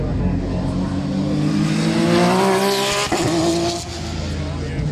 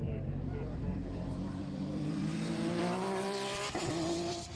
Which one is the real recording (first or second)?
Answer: first